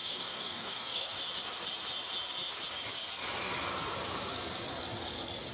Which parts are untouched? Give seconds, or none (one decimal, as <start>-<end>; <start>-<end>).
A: 1.2-5.5